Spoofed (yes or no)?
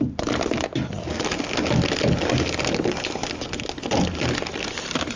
no